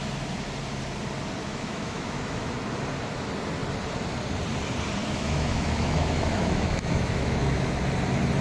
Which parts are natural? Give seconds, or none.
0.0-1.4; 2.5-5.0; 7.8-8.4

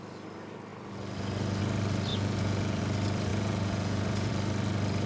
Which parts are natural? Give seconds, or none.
0.0-2.1; 2.8-3.3; 4.3-5.1

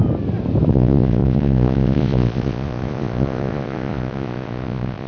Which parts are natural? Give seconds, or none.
0.0-0.7